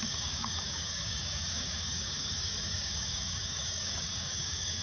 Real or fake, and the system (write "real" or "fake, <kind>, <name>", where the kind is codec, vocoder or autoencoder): fake, codec, DAC